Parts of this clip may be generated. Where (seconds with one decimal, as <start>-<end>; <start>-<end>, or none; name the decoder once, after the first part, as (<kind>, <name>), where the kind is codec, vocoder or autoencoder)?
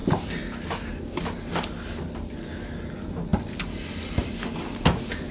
none